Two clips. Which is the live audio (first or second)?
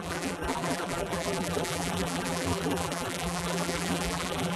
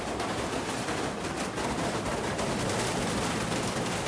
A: second